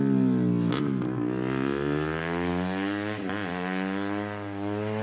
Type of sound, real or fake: real